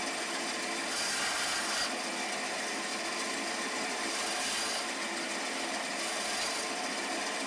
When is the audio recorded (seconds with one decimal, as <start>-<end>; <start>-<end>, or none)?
0.0-7.5